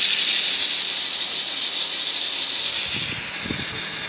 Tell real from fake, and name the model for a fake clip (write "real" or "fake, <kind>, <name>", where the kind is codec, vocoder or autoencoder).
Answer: real